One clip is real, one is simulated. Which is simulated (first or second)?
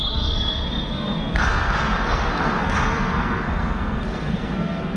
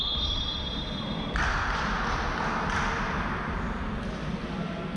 first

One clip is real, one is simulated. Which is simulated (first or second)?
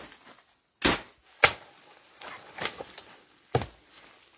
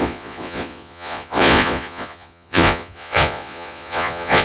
second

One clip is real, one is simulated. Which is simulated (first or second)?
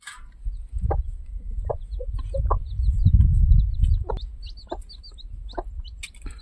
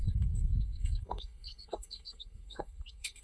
second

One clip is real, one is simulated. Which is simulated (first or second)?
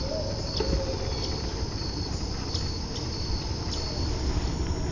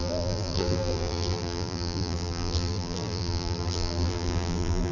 second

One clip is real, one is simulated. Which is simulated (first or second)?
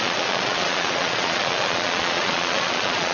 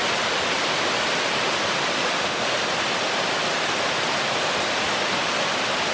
first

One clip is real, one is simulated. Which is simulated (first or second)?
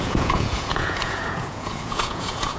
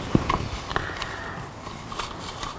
first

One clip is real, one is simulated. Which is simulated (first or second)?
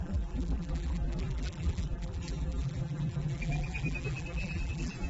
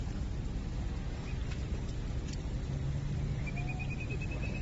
first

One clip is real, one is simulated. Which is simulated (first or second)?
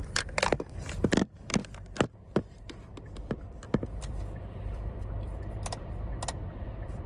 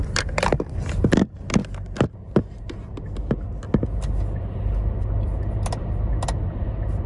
first